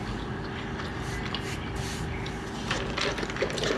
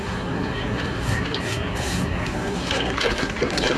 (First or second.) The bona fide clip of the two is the first